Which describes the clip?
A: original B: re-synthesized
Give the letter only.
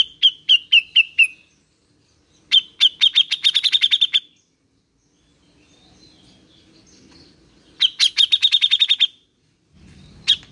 A